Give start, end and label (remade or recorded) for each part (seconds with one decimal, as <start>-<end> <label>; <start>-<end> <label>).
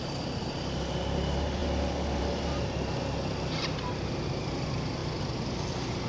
0.0-1.6 remade; 1.6-2.2 recorded; 2.2-5.0 remade; 5.0-6.1 recorded